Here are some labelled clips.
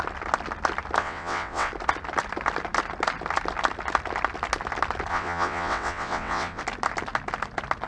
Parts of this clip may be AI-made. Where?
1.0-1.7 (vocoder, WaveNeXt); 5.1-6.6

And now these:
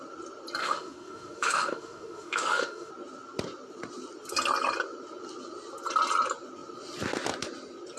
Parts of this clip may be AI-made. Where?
0.6-2.9 (autoencoder, DAC-VAE)